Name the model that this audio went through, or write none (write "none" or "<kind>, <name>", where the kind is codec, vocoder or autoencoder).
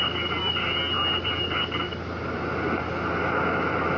none